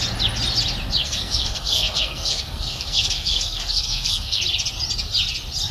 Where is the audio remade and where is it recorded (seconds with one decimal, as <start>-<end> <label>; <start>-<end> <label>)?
0.0-1.0 recorded; 1.0-4.4 remade; 4.4-5.7 recorded